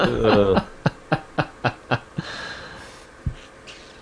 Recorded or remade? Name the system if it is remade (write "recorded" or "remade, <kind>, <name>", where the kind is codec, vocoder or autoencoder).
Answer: recorded